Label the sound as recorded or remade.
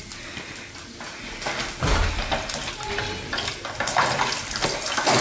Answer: recorded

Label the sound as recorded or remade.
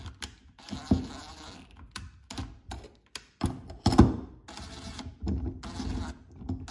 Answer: recorded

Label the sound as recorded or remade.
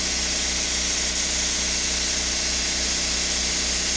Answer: recorded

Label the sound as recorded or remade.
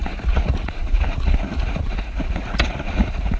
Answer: remade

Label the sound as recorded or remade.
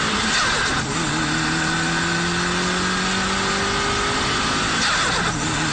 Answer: recorded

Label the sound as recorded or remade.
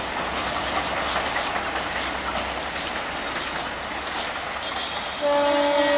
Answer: recorded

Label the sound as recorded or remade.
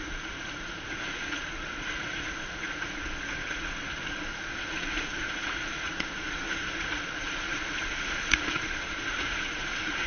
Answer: remade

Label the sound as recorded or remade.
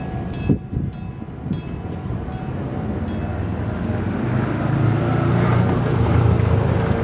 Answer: recorded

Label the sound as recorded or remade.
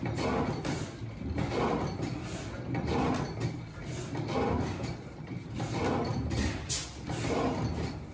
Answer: recorded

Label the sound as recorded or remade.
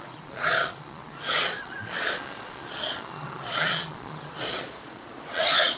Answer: remade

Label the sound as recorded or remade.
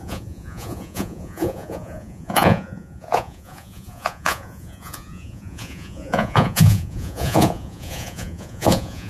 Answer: remade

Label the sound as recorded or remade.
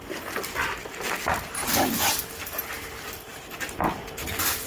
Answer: recorded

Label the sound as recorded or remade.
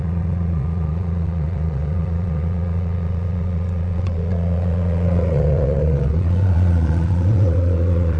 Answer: remade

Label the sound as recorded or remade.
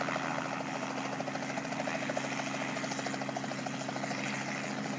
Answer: recorded